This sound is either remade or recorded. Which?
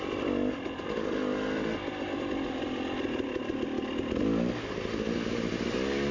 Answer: recorded